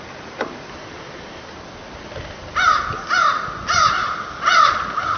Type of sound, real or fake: real